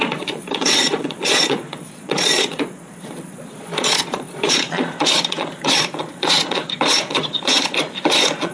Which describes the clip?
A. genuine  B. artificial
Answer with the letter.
B